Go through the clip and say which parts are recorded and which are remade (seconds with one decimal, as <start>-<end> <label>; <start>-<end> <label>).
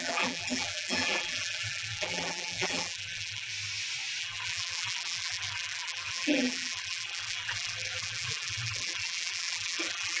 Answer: 0.0-3.5 remade; 3.5-4.2 recorded; 4.2-10.2 remade